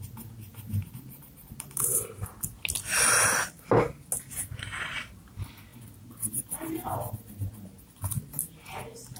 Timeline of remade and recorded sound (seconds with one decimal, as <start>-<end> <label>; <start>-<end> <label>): 0.0-0.5 recorded; 0.5-2.3 remade; 2.3-9.2 recorded